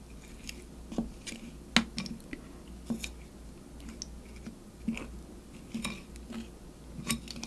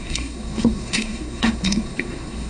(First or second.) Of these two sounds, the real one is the first